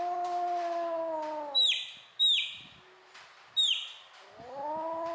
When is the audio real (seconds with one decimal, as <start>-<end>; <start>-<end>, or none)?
0.0-5.1